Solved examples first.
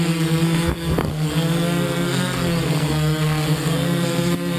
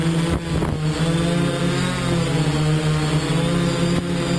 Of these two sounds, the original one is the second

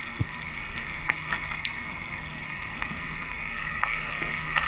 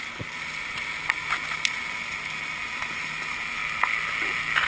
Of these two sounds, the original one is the second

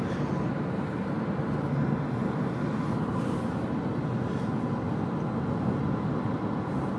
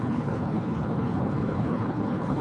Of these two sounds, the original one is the first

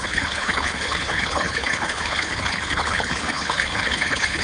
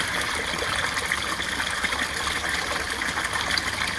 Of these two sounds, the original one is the second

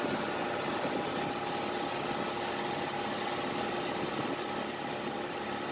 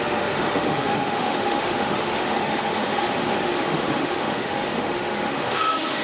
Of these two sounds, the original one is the first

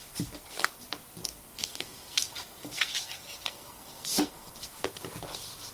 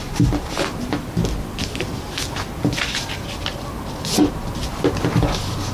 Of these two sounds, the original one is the second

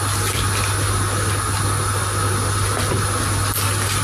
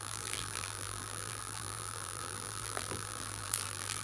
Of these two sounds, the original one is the first